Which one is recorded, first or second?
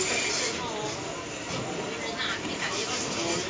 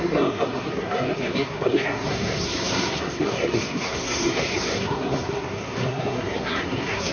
first